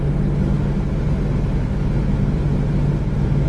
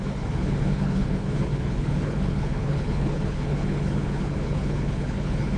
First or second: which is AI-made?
second